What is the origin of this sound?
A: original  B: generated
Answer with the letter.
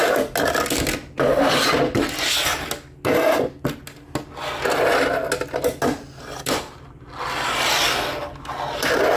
A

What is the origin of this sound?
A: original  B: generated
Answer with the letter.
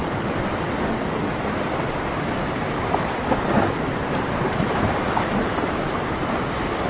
A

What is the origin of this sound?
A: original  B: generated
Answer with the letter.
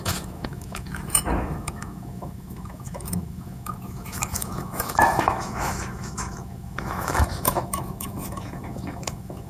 B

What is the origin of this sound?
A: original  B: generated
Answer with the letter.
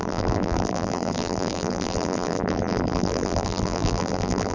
B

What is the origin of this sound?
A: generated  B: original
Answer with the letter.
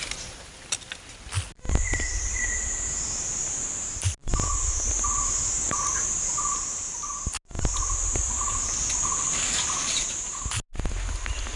B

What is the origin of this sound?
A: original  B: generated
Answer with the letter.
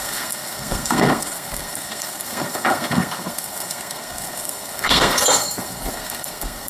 B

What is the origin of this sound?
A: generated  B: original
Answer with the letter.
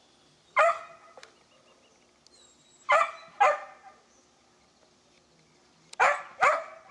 B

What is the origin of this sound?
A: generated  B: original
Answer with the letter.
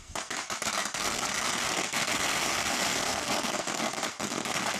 A